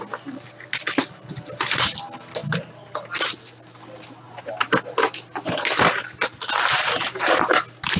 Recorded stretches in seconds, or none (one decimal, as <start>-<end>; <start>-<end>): 0.0-8.0